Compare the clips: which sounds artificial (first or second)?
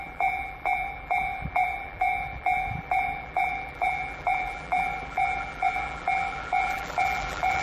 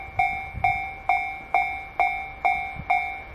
first